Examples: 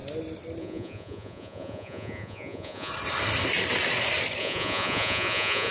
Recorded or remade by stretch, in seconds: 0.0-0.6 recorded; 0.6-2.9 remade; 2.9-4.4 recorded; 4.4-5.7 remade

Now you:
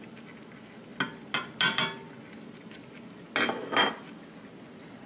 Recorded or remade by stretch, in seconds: 0.0-5.1 recorded

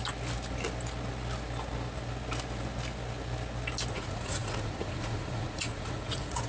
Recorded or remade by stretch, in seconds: 0.0-3.9 recorded; 3.9-6.5 remade

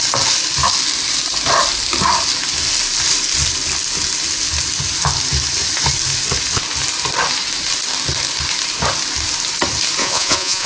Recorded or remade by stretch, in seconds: 0.0-10.0 recorded; 10.0-10.7 remade